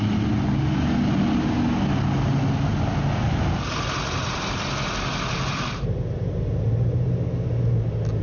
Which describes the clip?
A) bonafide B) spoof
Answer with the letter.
A